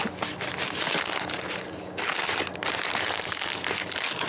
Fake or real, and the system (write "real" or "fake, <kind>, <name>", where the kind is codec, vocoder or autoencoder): real